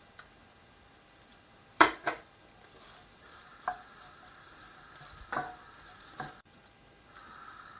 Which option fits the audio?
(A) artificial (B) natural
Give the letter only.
A